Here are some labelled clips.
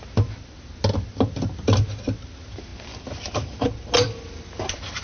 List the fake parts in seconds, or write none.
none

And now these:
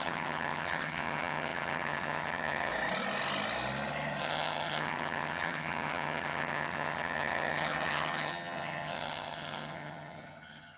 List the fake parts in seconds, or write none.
0.0-2.7 (vocoder, HiFi-GAN); 4.2-10.8

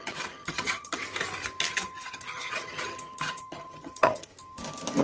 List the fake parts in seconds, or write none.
0.0-1.0 (vocoder, HiFi-GAN); 1.7-4.3

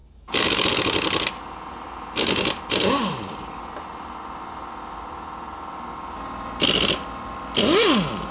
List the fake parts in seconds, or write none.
none

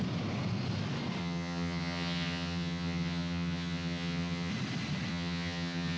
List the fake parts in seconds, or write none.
1.2-4.5 (vocoder, HiFi-GAN); 5.1-6.0

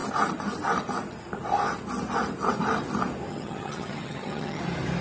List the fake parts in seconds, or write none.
3.3-4.6 (vocoder, HiFi-GAN)